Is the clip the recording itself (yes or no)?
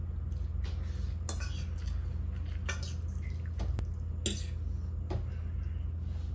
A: yes